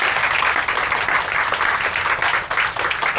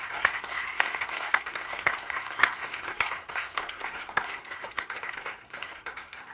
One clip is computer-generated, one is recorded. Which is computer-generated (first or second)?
second